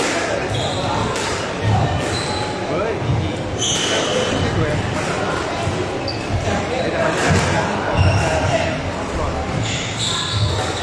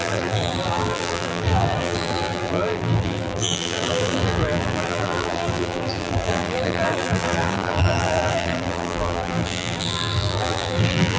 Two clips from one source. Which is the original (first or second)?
first